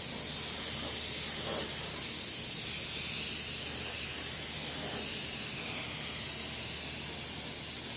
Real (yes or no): yes